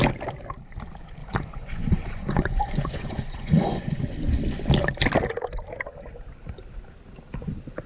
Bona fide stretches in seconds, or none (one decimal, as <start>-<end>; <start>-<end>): 0.0-1.2; 4.0-7.9